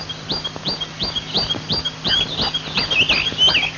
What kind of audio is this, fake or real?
real